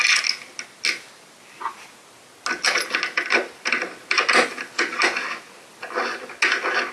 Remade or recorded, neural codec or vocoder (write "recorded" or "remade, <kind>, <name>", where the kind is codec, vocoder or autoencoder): recorded